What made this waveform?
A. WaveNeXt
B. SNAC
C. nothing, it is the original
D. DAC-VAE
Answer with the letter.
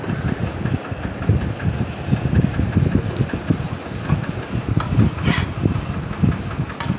C